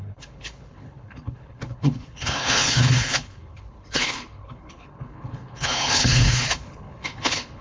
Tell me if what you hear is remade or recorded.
remade